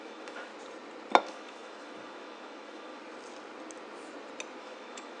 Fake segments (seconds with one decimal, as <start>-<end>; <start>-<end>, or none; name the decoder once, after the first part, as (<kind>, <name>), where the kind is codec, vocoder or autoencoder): 0.0-0.5 (autoencoder, DAC-VAE); 1.2-3.0; 4.6-5.2